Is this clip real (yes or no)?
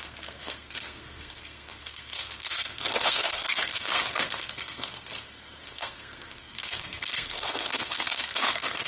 no